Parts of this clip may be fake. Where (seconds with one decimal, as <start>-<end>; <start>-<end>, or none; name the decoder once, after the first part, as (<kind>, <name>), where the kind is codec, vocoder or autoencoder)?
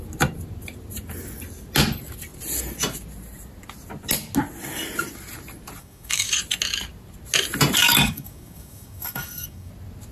5.8-6.4 (codec, DAC); 7.8-9.7